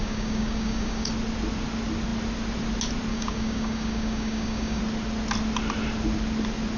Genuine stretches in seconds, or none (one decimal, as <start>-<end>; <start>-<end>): 1.1-3.1; 4.8-6.8